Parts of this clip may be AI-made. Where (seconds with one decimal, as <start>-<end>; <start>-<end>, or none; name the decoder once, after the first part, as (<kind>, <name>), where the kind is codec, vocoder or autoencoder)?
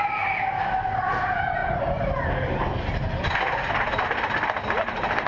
none